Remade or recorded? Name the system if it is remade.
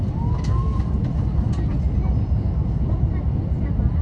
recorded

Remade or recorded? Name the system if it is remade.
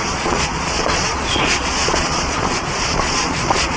remade, vocoder, Vocos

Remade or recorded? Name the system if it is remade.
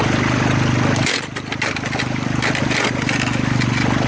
recorded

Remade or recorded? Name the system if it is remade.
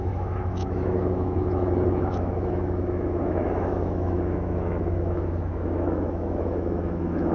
remade, autoencoder, DAC-VAE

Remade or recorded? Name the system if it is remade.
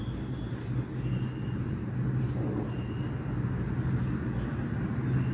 recorded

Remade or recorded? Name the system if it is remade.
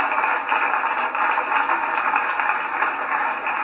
recorded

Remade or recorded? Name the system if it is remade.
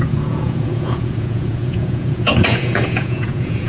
remade, vocoder, Vocos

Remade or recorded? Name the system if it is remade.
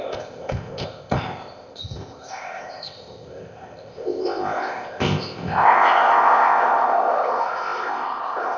remade, codec, ZipCodec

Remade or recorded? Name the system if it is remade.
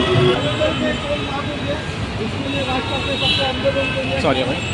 recorded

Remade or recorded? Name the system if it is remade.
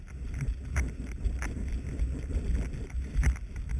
recorded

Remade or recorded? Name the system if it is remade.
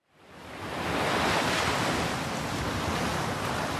remade, vocoder, BigVGAN v2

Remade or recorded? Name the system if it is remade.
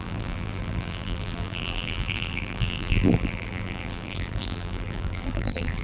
remade, vocoder, BigVGAN v2